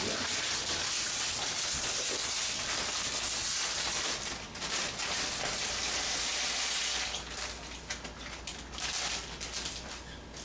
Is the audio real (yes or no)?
yes